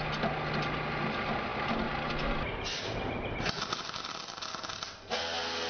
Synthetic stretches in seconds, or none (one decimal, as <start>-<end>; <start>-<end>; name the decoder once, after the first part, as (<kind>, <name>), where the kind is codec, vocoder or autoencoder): none